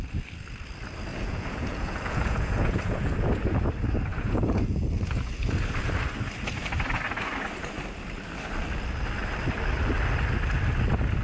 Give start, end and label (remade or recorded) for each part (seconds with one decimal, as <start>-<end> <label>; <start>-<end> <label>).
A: 0.0-1.1 recorded; 1.1-3.6 remade; 3.6-4.1 recorded; 4.1-4.9 remade; 4.9-11.2 recorded